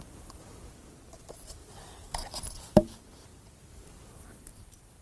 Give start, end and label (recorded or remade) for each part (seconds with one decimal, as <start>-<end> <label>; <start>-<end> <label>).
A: 0.0-1.6 recorded; 1.6-2.5 remade; 2.5-3.3 recorded; 3.3-4.6 remade; 4.6-5.0 recorded